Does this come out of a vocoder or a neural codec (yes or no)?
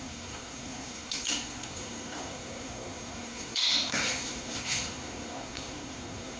yes